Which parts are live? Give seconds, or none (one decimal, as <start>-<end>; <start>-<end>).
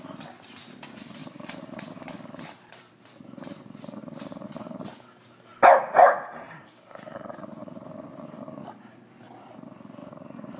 0.0-1.2; 2.9-4.0; 4.7-5.5; 7.9-10.6